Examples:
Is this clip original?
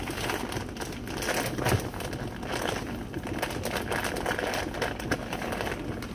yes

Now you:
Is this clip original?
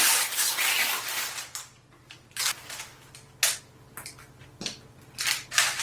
yes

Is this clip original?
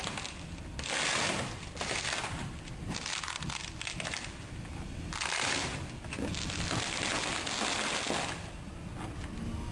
yes